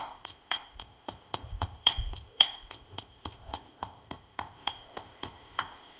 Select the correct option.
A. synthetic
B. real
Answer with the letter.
A